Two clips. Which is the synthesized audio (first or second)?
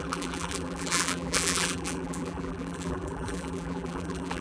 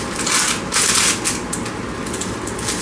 first